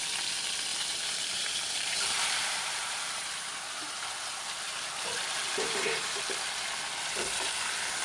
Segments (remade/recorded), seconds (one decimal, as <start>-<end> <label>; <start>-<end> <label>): 0.0-0.7 recorded; 0.7-2.6 remade; 2.6-5.5 recorded; 5.5-6.2 remade; 6.2-8.0 recorded